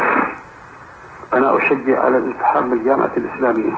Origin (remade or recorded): recorded